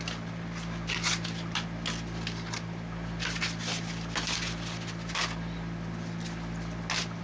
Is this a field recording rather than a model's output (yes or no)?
yes